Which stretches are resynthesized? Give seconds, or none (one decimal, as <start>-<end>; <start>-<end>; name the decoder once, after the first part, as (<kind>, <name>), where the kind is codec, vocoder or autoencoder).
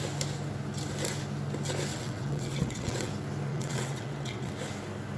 1.9-3.1 (vocoder, WaveNeXt); 3.5-4.5